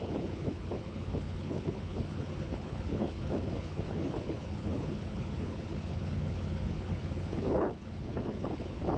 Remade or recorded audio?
remade